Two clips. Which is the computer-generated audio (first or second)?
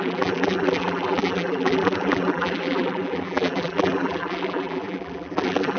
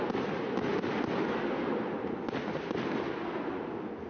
first